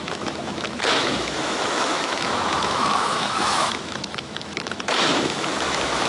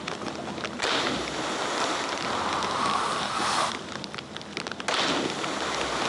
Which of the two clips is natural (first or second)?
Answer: second